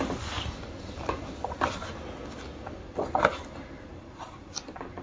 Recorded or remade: recorded